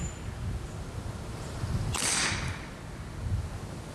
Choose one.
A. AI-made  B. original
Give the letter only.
B